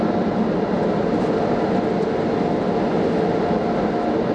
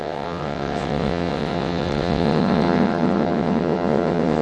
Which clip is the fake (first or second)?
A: second